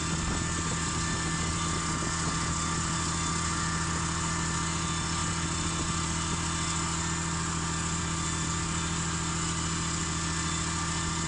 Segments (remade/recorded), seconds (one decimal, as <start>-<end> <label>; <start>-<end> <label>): 0.0-11.3 recorded